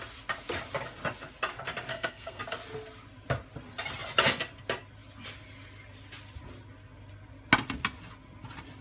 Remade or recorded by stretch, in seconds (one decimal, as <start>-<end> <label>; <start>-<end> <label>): 0.0-1.9 recorded; 1.9-2.4 remade; 2.4-8.8 recorded